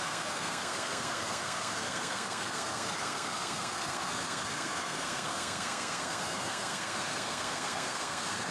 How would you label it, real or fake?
fake